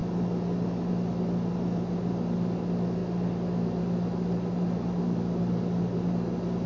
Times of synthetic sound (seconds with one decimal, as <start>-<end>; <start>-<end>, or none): none